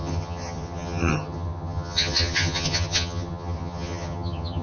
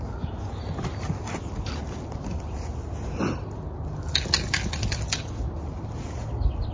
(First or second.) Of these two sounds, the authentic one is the second